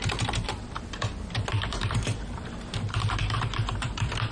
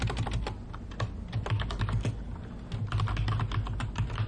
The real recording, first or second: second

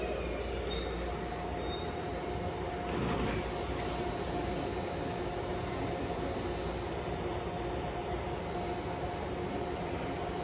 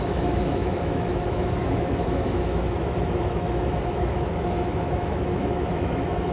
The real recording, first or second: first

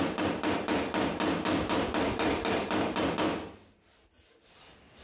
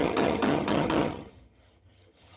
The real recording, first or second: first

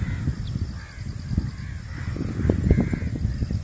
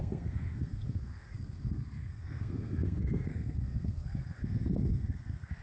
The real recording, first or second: first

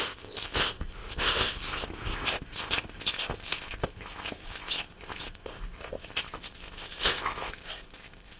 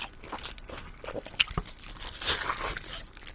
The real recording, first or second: second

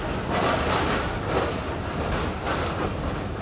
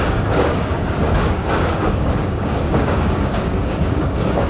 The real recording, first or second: first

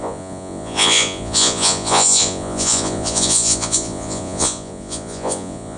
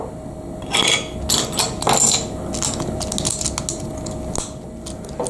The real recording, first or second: second